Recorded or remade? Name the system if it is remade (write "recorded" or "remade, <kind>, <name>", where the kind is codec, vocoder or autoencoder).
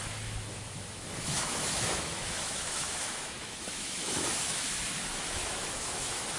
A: remade, autoencoder, DAC-VAE